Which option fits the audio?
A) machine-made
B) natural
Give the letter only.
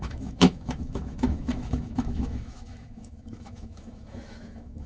A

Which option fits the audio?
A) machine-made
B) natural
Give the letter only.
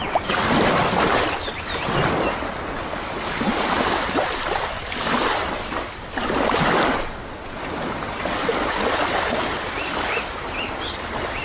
B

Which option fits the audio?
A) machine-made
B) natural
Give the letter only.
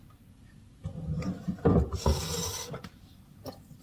B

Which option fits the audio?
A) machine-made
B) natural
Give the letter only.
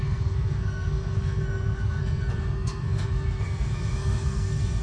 A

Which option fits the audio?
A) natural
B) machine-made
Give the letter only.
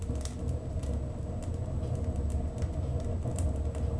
A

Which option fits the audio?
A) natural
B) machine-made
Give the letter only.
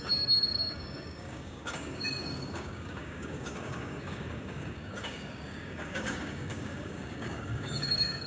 B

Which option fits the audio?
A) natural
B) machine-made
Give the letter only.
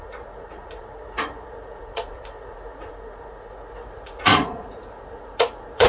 B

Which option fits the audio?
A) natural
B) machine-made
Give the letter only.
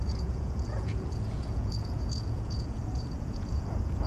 B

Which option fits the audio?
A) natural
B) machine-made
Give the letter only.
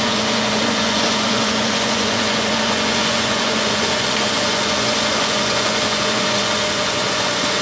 B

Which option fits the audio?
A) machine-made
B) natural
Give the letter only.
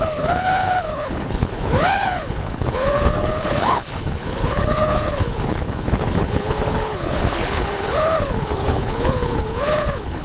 A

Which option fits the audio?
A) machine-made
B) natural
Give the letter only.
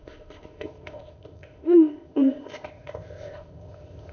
A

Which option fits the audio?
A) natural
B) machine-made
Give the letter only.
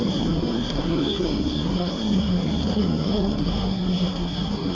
B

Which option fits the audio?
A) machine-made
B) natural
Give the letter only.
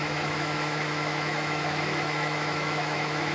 A